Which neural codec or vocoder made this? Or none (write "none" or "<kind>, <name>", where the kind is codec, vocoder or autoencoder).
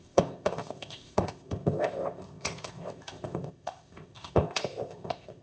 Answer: codec, ZipCodec